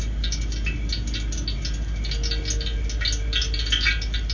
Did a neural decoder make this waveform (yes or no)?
no